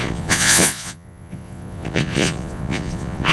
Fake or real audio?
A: fake